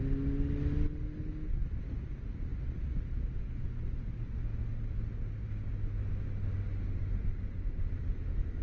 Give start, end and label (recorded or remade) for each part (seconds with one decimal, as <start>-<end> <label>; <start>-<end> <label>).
0.0-8.6 recorded